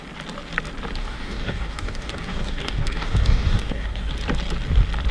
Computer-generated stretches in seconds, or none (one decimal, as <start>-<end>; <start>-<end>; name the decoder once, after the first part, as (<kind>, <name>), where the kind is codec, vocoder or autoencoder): 1.0-4.1 (codec, DAC)